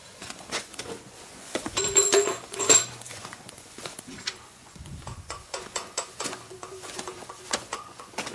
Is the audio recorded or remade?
remade